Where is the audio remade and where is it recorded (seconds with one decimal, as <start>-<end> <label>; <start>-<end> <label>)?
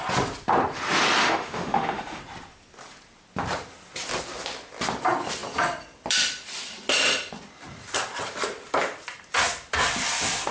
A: 0.0-1.2 recorded; 1.2-2.2 remade; 2.2-10.5 recorded